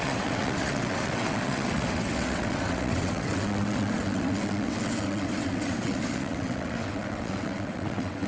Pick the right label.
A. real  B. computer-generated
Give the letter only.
B